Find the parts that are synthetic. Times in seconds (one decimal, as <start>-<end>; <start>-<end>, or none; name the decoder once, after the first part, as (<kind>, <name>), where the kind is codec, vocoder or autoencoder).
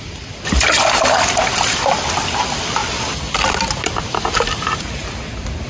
none